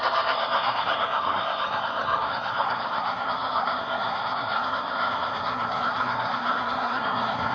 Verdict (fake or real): fake